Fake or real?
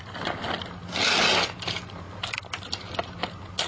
real